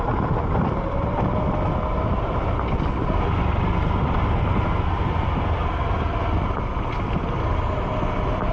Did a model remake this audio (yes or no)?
no